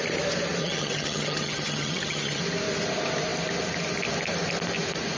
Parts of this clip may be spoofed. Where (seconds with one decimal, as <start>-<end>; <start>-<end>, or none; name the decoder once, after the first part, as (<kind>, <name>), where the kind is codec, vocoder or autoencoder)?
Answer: 0.6-2.4 (vocoder, HiFi-GAN)